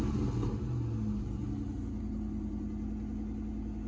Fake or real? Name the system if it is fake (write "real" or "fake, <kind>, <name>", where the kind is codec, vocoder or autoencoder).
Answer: real